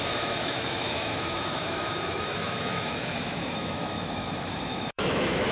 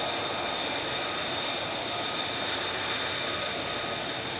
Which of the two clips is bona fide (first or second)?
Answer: second